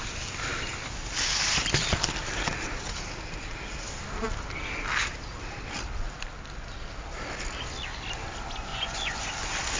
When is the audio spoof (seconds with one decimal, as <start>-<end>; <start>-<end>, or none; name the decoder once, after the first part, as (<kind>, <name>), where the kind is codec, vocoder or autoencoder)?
8.7-9.3 (vocoder, Vocos)